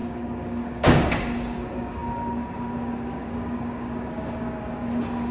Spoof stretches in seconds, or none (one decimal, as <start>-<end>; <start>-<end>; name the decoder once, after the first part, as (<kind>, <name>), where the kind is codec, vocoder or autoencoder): 0.0-5.3 (codec, DAC)